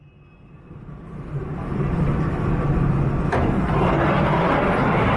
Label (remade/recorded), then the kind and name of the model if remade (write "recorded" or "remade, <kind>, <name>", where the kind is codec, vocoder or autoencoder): recorded